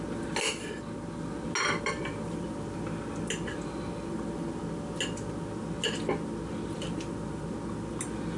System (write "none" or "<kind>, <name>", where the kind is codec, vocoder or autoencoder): none